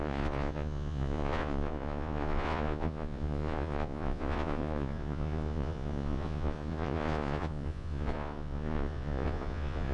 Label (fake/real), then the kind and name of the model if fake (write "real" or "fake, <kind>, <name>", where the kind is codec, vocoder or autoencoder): fake, vocoder, Vocos